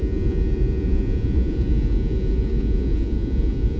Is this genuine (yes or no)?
no